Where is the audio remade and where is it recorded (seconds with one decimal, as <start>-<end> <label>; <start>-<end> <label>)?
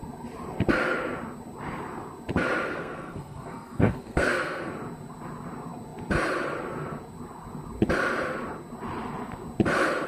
0.0-2.7 recorded; 2.7-4.7 remade; 4.7-10.1 recorded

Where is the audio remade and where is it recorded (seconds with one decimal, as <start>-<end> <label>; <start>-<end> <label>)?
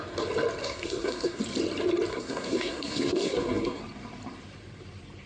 0.0-0.6 recorded; 0.6-1.4 remade; 1.4-2.1 recorded; 2.1-3.8 remade; 3.8-5.3 recorded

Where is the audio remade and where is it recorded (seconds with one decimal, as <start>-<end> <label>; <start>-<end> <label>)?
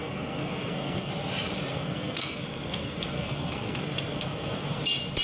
0.0-1.1 remade; 1.1-1.7 recorded; 1.7-4.8 remade; 4.8-5.2 recorded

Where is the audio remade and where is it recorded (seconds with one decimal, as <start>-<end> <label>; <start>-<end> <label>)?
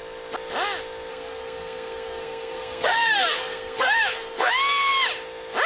0.0-1.1 recorded; 1.1-4.5 remade; 4.5-5.7 recorded